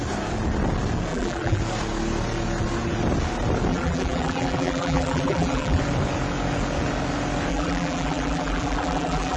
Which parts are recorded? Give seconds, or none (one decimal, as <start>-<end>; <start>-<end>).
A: 0.0-1.1; 1.6-3.7; 5.8-7.5